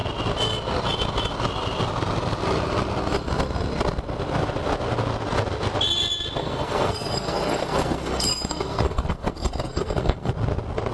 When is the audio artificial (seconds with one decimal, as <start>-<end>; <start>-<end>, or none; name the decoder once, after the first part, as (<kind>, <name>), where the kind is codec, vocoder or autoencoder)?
6.4-10.3 (codec, SNAC)